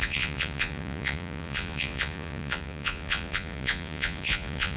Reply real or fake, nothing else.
fake